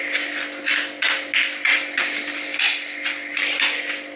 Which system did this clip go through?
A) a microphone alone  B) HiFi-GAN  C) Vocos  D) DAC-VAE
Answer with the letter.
A